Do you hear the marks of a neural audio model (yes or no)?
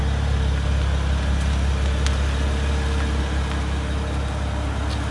no